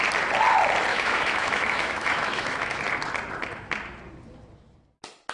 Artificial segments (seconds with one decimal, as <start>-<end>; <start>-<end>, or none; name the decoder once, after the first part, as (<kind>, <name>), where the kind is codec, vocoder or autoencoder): 0.9-2.8 (autoencoder, DAC-VAE)